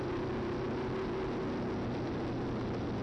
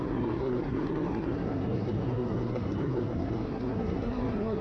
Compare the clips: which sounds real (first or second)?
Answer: first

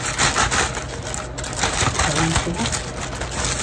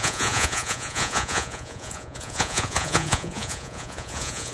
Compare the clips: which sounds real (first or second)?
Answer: first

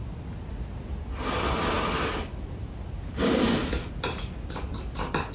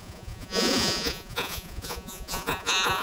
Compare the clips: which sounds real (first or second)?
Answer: first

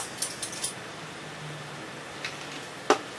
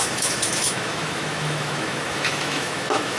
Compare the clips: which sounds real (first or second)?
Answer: first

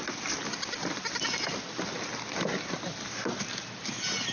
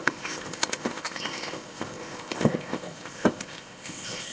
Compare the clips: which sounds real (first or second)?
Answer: first